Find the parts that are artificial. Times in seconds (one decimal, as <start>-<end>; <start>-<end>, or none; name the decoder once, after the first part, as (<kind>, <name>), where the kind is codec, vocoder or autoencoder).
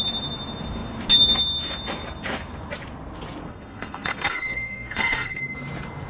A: 3.4-5.4 (codec, SNAC)